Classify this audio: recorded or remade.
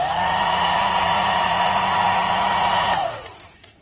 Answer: remade